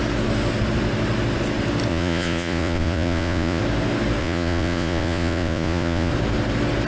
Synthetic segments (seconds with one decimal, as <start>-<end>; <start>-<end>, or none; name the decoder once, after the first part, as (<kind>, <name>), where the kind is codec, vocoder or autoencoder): 1.9-3.6 (vocoder, Vocos); 4.2-6.1